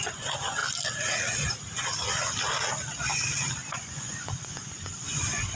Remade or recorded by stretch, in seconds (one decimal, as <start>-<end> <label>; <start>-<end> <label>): 0.0-0.6 remade; 0.6-3.7 recorded; 3.7-5.6 remade